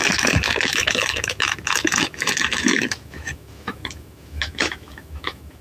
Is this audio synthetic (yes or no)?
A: yes